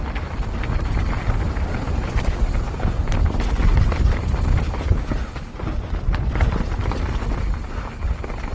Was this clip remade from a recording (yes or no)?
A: no